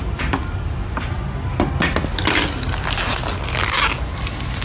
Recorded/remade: recorded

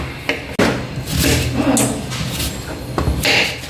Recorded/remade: recorded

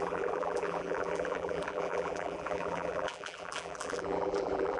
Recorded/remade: remade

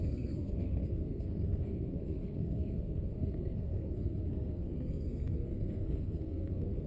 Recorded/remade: remade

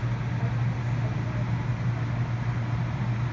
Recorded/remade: recorded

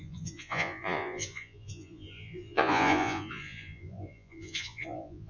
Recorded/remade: remade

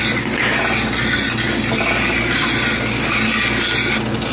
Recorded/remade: recorded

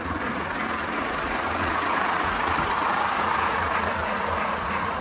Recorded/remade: remade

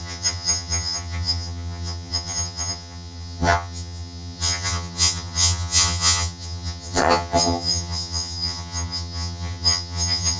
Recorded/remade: remade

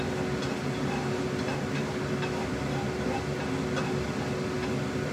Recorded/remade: recorded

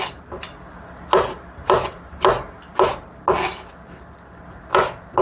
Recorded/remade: recorded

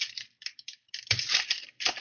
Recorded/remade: remade